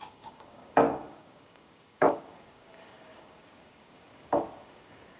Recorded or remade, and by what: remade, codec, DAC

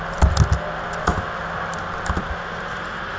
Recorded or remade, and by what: recorded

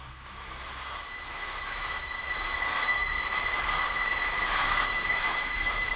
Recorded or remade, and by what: remade, autoencoder, DAC-VAE